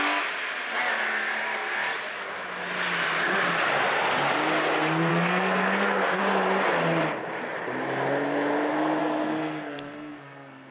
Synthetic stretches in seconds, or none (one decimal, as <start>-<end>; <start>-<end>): 5.1-6.2; 9.0-10.7